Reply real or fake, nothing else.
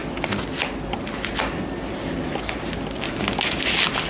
real